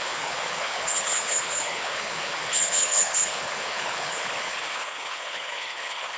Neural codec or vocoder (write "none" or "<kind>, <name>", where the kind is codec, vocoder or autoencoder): codec, HILCodec